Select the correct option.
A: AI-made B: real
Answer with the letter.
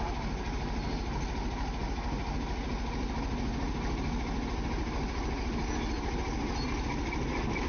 B